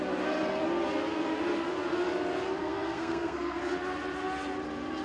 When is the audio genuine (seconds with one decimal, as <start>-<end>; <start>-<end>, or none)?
0.0-2.6; 3.6-5.0